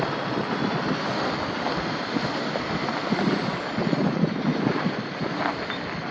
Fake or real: real